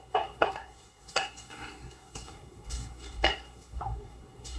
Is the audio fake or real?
fake